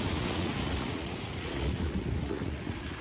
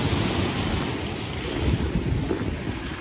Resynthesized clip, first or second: first